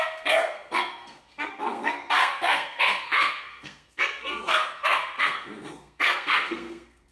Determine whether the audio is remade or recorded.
remade